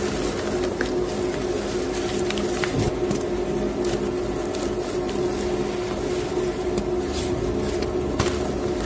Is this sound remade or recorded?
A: recorded